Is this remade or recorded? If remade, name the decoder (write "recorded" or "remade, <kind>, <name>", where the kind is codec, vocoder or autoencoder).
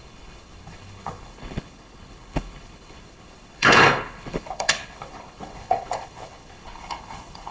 remade, codec, HILCodec